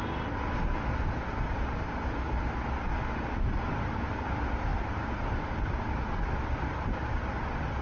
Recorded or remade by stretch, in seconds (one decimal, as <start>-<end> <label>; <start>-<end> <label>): 0.0-4.7 recorded; 4.7-6.4 remade; 6.4-7.8 recorded